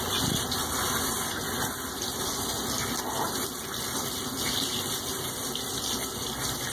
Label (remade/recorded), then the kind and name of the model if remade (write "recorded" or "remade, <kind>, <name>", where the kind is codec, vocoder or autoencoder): remade, vocoder, BigVGAN v2